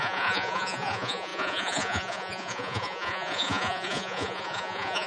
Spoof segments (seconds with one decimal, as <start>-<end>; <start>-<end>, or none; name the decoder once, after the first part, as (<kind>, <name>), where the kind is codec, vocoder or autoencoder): 0.0-5.1 (vocoder, Vocos)